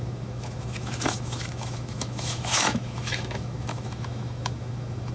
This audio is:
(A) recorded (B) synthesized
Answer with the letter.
B